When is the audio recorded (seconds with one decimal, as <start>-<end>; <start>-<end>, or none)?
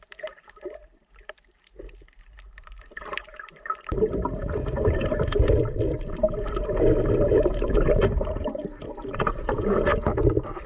none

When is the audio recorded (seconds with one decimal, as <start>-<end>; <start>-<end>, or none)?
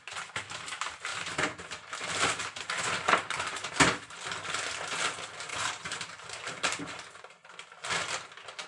0.0-1.1; 4.2-5.5; 7.5-8.7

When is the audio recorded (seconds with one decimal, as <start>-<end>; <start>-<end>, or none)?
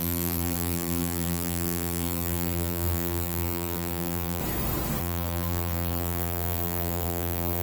4.4-5.0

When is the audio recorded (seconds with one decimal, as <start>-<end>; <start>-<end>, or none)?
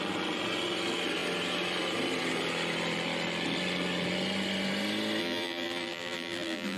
0.0-5.2